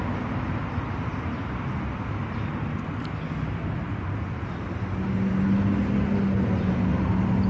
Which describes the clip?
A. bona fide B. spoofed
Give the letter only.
A